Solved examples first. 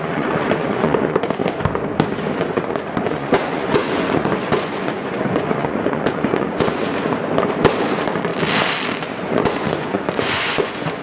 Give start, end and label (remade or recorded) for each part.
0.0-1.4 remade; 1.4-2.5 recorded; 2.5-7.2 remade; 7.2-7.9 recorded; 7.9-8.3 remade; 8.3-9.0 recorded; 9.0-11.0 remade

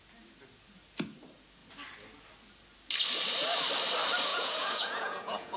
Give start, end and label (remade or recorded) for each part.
0.0-4.3 recorded; 4.3-5.6 remade

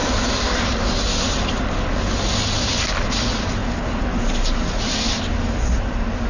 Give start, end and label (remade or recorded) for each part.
0.0-6.3 recorded

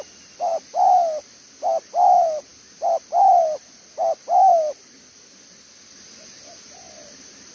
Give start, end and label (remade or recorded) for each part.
0.0-7.5 recorded

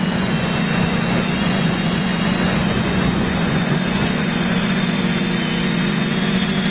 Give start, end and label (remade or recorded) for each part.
0.0-6.7 remade

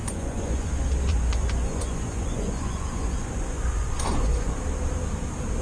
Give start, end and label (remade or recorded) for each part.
0.0-0.7 remade; 0.7-1.1 recorded; 1.1-4.5 remade; 4.5-5.6 recorded